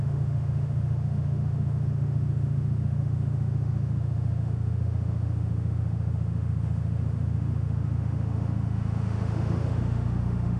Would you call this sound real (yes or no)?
no